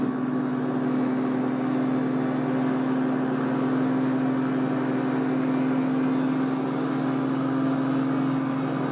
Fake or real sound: real